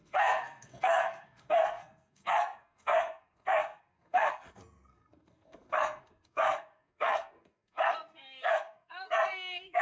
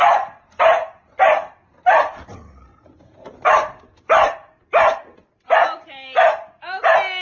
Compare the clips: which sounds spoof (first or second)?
first